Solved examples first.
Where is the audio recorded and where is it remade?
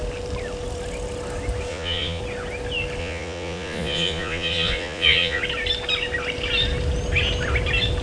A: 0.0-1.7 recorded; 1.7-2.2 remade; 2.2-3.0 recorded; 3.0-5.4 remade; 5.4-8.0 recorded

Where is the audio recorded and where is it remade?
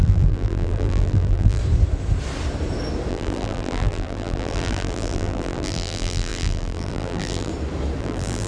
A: 0.0-1.6 remade; 1.6-3.1 recorded; 3.1-7.5 remade; 7.5-8.0 recorded; 8.0-8.5 remade